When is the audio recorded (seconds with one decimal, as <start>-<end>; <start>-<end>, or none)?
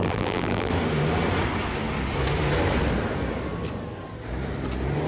0.7-5.1